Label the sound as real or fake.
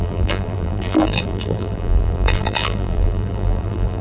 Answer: fake